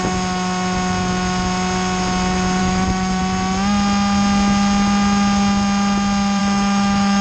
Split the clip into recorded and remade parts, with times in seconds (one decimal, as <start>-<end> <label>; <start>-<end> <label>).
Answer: 0.0-2.6 recorded; 2.6-3.2 remade; 3.2-6.4 recorded; 6.4-7.2 remade